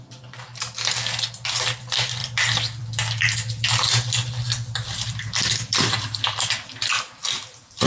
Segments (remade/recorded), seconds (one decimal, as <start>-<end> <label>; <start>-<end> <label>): 0.0-7.9 recorded